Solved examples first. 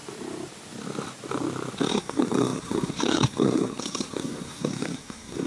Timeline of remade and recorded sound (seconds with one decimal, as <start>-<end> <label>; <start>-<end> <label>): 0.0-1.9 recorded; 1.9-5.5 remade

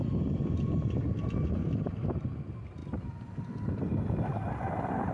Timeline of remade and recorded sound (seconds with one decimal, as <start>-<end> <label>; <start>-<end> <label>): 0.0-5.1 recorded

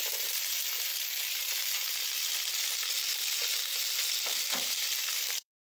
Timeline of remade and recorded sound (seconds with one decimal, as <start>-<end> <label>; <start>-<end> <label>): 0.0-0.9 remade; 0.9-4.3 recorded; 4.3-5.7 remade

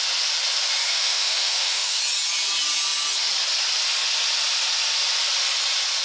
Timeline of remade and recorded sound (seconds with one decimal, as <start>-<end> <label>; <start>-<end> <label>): 0.0-0.8 recorded; 0.8-2.0 remade; 2.0-6.0 recorded

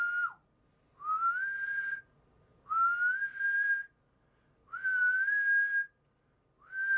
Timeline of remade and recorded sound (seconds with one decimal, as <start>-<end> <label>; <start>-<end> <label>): 0.0-7.0 recorded